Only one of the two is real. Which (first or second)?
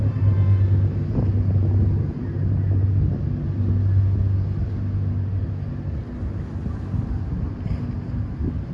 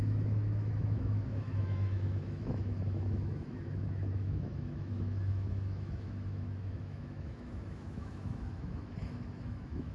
first